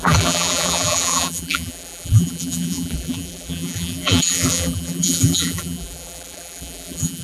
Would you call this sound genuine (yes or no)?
no